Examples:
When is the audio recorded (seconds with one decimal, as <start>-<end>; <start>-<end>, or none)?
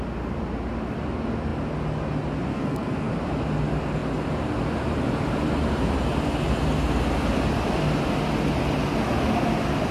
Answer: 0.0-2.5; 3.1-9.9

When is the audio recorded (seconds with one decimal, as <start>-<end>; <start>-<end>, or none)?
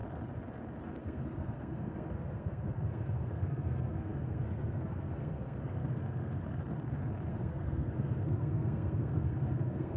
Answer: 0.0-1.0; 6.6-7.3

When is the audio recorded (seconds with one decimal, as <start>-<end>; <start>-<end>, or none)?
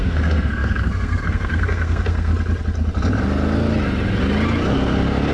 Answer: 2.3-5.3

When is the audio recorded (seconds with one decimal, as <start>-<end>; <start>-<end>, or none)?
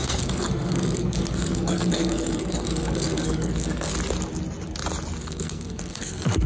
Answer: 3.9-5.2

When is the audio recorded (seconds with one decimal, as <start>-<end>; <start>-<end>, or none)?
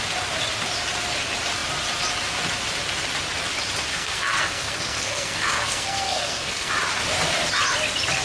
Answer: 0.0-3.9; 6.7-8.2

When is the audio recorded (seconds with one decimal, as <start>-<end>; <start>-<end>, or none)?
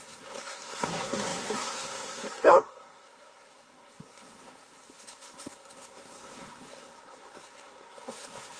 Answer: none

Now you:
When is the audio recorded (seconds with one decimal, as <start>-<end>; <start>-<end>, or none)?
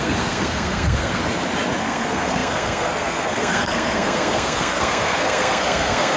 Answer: 1.2-1.8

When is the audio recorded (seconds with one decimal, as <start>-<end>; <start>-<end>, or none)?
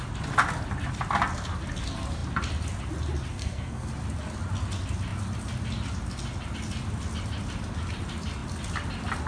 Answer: 0.0-3.3; 3.9-9.3